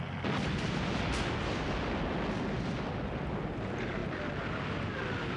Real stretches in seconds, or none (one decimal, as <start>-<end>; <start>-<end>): 0.0-5.4